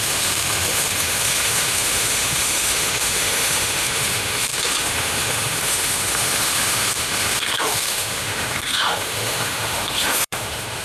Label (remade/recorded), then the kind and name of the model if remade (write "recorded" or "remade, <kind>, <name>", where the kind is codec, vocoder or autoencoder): remade, autoencoder, DAC-VAE